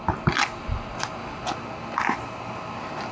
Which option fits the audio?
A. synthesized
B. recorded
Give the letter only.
B